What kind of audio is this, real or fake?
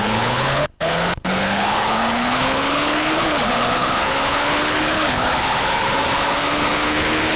fake